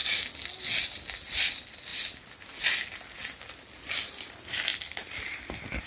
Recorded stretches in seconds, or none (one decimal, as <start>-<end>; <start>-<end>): 0.0-5.9